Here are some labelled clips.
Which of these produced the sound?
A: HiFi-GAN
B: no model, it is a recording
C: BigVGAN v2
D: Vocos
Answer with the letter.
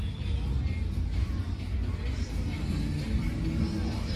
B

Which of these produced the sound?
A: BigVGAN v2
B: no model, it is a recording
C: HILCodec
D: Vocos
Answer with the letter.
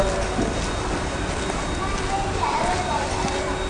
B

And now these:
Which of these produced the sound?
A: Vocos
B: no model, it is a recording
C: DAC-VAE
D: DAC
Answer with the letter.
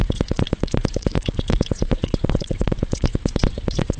A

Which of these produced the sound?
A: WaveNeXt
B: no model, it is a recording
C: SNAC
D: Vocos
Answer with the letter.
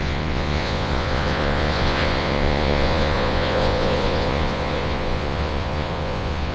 D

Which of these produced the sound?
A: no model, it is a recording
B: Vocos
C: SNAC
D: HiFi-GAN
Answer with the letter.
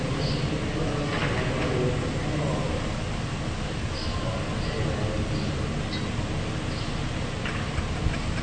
A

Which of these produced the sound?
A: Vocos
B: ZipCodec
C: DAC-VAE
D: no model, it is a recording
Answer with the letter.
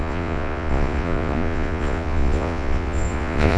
A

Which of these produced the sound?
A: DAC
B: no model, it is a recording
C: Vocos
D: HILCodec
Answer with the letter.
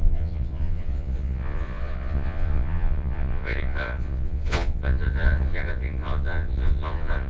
C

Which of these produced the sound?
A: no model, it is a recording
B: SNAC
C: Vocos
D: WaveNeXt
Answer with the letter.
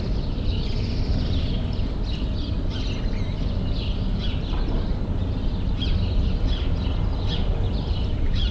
A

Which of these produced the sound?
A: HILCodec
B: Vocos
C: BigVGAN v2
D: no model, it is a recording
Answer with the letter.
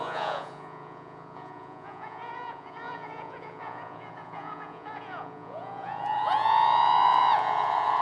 B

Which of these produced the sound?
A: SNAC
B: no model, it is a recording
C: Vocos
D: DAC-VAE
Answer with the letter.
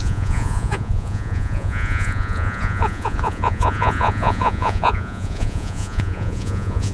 C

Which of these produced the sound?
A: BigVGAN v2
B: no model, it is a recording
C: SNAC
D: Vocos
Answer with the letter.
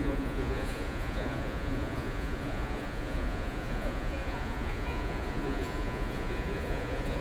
D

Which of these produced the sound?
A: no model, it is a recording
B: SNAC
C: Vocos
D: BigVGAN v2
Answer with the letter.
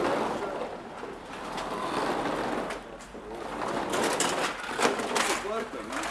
A